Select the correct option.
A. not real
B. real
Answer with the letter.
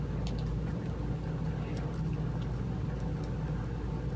B